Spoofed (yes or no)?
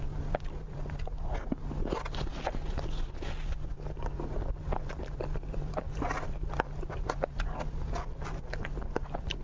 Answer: no